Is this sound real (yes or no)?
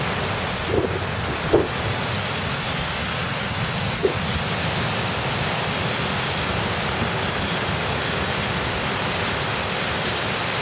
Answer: yes